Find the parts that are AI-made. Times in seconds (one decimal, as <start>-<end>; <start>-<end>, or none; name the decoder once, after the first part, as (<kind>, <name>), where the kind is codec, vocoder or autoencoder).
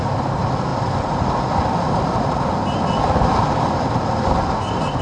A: none